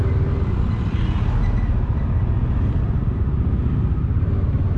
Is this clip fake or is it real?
real